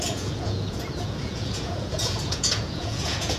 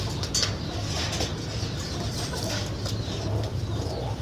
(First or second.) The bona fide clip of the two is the second